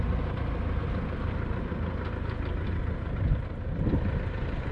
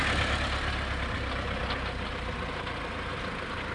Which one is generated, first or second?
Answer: first